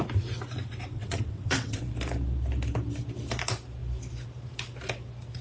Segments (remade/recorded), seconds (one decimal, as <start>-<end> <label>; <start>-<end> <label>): 0.0-0.9 recorded; 0.9-1.8 remade; 1.8-5.4 recorded